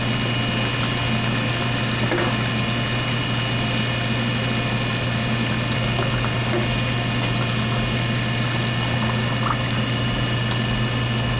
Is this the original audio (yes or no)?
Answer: yes